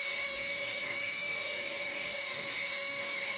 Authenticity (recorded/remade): remade